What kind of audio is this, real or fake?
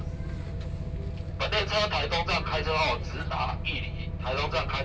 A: real